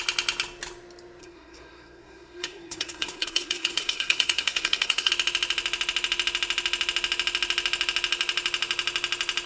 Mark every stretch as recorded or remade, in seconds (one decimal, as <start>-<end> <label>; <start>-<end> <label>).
0.0-1.2 recorded; 1.2-5.1 remade; 5.1-9.5 recorded